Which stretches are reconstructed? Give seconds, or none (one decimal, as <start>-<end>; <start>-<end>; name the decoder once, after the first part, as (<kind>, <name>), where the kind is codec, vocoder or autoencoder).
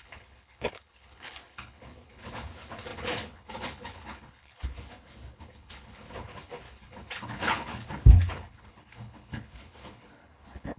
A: 0.0-10.8 (codec, HILCodec)